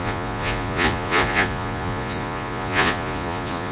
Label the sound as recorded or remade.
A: remade